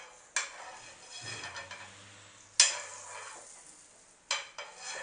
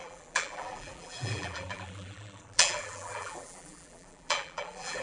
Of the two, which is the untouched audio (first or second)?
first